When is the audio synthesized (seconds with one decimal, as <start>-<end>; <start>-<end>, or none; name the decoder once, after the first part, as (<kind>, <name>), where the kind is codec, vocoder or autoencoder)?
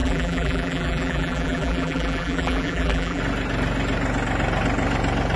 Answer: 0.0-3.2 (vocoder, BigVGAN v2)